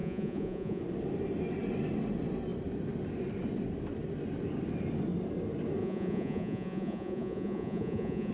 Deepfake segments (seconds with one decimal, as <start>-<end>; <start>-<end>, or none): 0.0-0.8; 5.8-8.3